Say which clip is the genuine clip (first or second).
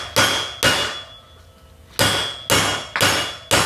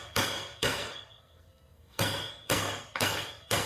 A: first